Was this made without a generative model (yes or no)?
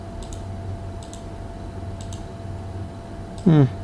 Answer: yes